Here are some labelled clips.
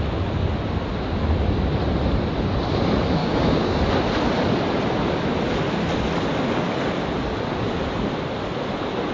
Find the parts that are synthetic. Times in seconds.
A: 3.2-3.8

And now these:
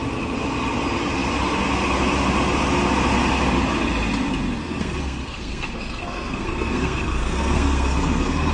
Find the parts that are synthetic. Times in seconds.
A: 4.6-8.5